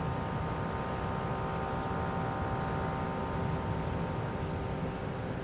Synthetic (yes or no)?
no